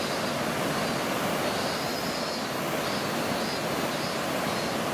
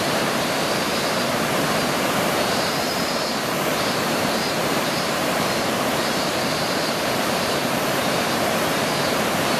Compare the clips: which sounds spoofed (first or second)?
second